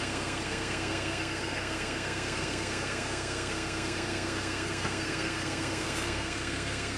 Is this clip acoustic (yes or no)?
no